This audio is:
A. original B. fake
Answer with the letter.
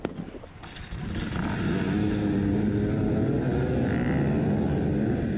A